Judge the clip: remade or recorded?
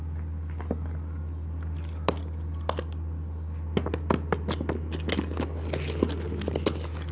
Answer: recorded